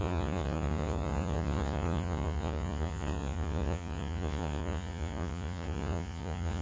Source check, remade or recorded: remade